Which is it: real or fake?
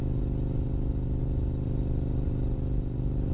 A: real